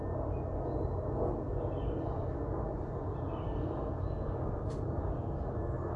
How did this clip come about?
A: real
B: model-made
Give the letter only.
A